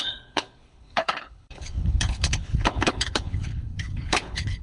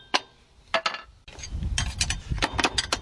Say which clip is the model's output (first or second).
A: first